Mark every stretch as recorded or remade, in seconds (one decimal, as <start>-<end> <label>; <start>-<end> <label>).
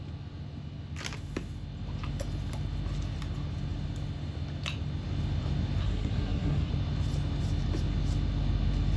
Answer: 0.0-5.8 recorded; 5.8-6.7 remade; 6.7-9.0 recorded